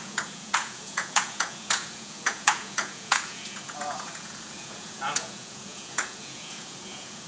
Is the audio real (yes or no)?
no